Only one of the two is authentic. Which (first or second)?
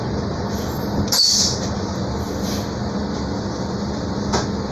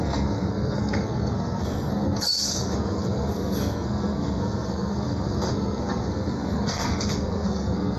first